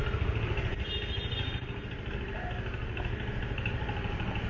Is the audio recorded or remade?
recorded